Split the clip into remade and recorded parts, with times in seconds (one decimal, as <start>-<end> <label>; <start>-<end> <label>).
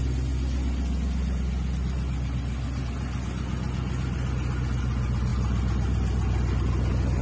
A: 0.0-7.2 recorded